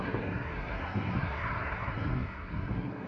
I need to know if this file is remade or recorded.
remade